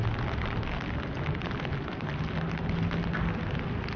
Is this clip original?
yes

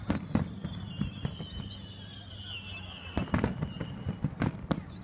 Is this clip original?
yes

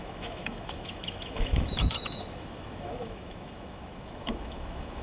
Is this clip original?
no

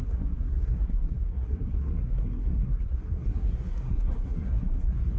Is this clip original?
no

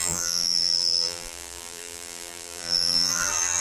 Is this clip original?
no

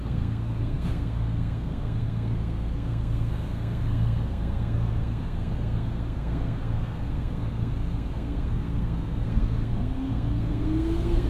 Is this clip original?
no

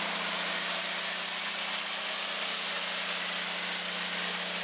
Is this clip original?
yes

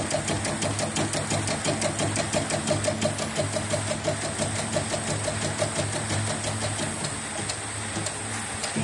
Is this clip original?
yes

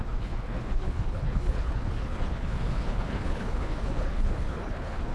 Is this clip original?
no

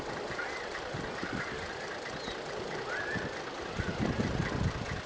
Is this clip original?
yes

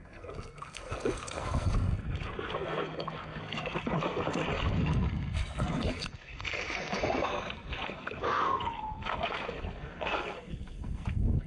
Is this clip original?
no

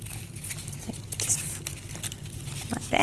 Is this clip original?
yes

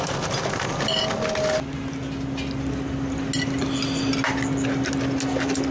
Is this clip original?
yes